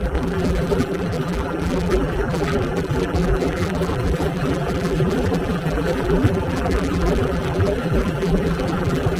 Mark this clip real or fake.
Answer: fake